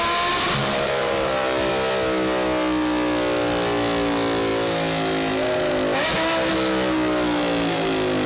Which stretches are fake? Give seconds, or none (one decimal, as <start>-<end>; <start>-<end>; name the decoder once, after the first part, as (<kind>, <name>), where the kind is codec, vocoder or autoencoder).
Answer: 0.6-1.7 (vocoder, BigVGAN v2)